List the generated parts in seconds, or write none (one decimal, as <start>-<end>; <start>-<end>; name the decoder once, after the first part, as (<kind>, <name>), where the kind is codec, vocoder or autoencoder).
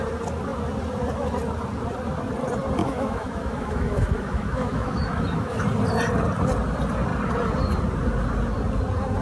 2.8-5.6 (autoencoder, DAC-VAE)